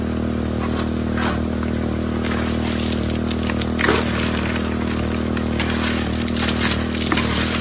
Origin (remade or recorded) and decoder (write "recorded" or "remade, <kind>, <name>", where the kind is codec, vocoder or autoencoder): recorded